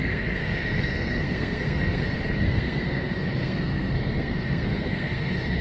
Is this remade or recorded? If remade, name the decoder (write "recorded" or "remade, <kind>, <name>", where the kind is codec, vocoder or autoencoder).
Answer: remade, codec, SNAC